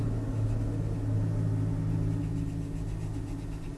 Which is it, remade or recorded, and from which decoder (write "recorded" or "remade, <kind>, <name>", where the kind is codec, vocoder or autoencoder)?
recorded